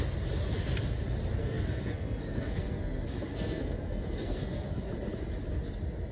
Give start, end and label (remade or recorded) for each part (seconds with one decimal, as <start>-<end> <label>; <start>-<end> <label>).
0.0-1.4 recorded; 1.4-4.8 remade; 4.8-6.1 recorded